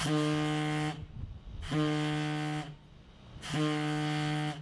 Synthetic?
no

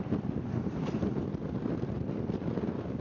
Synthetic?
no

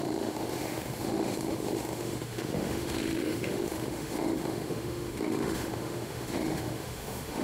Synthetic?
yes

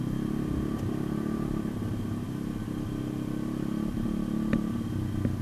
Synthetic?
no